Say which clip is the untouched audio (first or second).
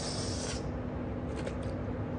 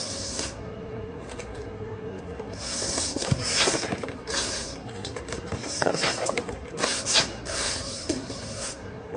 first